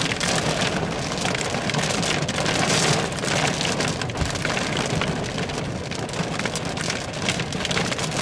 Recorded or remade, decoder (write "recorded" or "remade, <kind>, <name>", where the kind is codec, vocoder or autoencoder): recorded